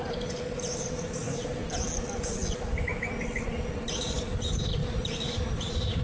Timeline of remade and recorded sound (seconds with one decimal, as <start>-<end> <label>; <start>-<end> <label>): 0.0-1.6 remade; 1.6-3.9 recorded; 3.9-6.0 remade